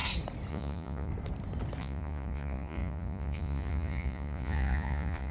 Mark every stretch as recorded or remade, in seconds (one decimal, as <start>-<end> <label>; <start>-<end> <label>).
0.0-0.5 recorded; 0.5-1.1 remade; 1.1-1.8 recorded; 1.8-5.3 remade